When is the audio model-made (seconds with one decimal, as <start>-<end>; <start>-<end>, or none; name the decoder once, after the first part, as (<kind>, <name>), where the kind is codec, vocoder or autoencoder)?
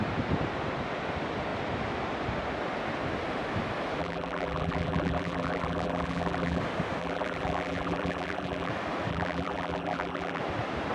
4.0-6.6 (vocoder, BigVGAN v2); 7.0-8.7; 9.1-10.4